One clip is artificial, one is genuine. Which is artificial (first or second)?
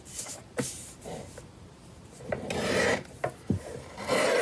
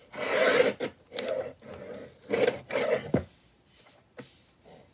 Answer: first